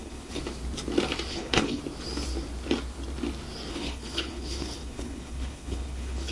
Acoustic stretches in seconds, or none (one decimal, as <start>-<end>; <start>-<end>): 0.4-1.3; 1.8-3.7